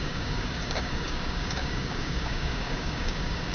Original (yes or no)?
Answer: no